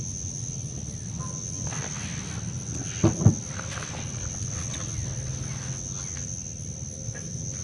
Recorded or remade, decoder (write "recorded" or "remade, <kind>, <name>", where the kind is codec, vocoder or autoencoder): recorded